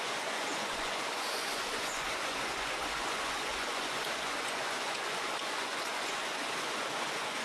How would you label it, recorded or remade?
remade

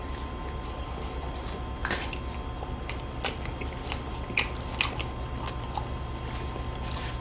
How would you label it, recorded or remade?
recorded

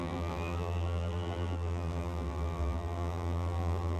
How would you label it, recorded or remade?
remade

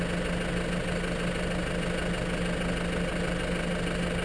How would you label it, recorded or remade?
recorded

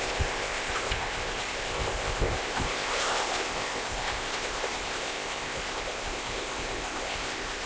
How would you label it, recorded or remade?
remade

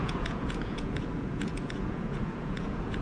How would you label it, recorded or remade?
remade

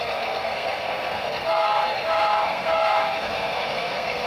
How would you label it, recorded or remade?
remade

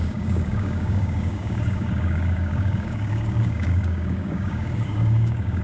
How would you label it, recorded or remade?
remade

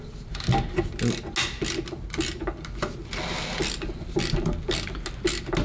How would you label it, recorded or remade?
recorded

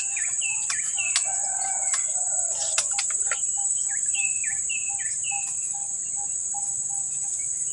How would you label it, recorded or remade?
recorded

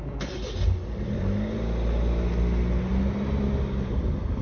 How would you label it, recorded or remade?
recorded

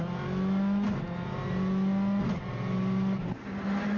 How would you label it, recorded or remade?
recorded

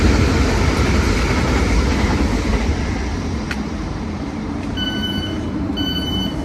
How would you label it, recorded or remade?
recorded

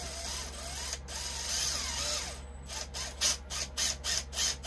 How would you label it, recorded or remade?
recorded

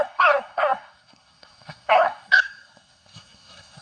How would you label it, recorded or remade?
remade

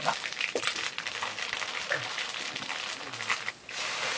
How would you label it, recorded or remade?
recorded